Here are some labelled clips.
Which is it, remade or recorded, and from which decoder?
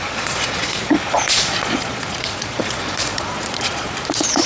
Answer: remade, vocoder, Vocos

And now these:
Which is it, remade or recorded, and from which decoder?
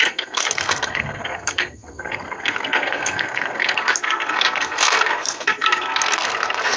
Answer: remade, codec, SNAC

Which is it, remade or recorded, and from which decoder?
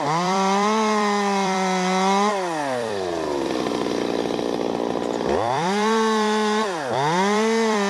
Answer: remade, vocoder, BigVGAN v2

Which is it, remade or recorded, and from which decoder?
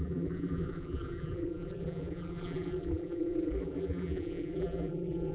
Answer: remade, vocoder, BigVGAN v2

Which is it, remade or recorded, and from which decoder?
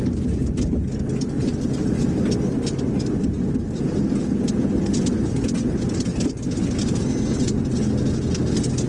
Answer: recorded